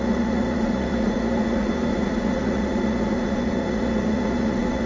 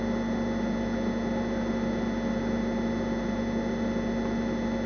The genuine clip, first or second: second